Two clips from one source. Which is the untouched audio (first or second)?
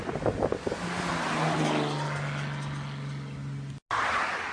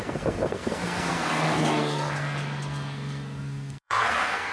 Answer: first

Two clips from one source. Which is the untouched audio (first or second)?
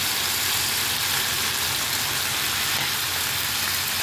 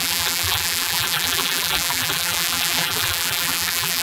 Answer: first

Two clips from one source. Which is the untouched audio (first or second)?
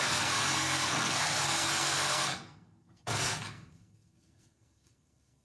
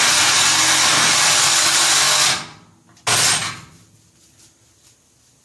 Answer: second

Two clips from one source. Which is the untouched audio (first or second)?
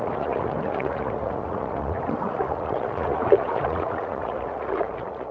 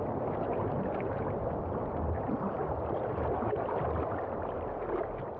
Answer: second